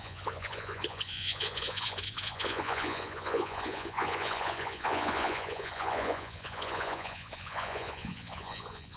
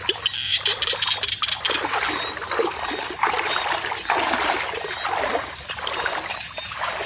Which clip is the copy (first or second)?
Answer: first